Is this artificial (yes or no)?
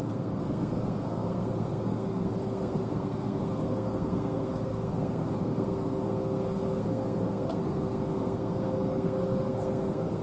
yes